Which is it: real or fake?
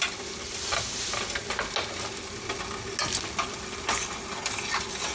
real